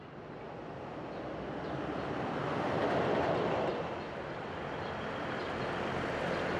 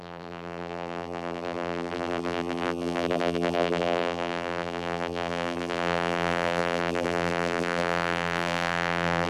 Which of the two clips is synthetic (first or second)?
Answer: second